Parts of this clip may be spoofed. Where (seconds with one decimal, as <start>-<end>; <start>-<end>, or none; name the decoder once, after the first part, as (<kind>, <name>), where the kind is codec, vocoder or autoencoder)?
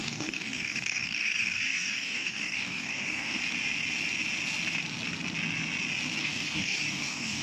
0.0-3.4 (codec, DAC); 6.2-7.4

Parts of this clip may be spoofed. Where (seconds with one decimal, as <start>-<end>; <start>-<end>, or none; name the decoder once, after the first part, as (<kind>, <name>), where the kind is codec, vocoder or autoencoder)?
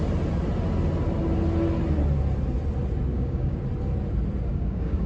3.1-3.6 (codec, DAC); 4.5-5.1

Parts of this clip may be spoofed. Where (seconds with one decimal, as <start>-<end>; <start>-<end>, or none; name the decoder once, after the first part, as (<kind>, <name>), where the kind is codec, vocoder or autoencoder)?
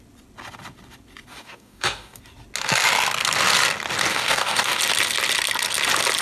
1.3-2.2 (codec, DAC); 4.1-4.8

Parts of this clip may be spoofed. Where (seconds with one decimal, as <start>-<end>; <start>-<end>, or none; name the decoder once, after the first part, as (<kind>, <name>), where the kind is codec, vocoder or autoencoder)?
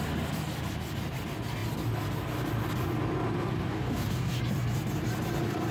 3.7-4.4 (codec, DAC)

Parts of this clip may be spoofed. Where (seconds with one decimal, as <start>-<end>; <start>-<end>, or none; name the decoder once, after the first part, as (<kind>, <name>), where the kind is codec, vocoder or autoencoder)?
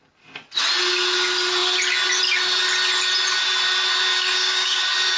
4.1-4.8 (codec, DAC)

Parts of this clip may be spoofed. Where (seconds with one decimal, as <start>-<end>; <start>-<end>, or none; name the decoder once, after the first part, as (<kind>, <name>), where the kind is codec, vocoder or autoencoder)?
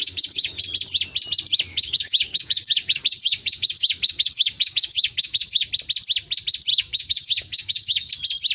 0.0-0.6 (codec, DAC); 1.7-5.7; 6.7-8.1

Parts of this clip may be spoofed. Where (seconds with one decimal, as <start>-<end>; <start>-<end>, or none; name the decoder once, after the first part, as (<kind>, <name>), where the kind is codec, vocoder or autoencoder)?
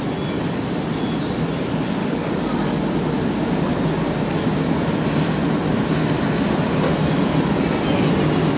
2.0-2.8 (codec, DAC)